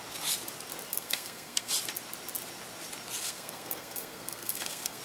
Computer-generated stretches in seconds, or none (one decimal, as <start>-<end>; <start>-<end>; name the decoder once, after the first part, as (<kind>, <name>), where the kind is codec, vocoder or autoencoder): 0.9-1.7 (codec, SNAC); 3.2-5.0

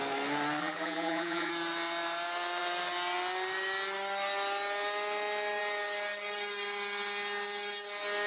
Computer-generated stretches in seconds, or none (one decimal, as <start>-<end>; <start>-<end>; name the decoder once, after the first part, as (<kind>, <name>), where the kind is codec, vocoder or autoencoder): 0.6-1.5 (vocoder, BigVGAN v2)